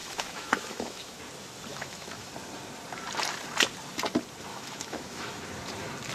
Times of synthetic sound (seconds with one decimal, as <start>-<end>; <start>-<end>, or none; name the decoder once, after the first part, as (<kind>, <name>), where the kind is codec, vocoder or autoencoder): 0.0-1.2 (autoencoder, DAC-VAE); 1.7-2.3; 4.5-5.4

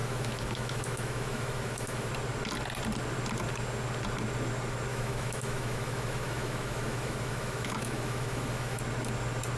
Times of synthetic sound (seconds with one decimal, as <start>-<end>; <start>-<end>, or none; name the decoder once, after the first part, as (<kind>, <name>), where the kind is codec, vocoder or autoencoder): 0.0-2.1 (autoencoder, DAC-VAE); 4.9-8.8

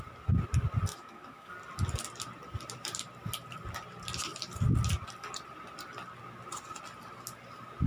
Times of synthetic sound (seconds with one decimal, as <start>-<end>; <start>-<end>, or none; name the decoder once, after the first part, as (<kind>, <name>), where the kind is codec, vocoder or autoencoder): 0.9-1.5 (autoencoder, DAC-VAE)